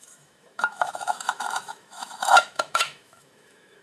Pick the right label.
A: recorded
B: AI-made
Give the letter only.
B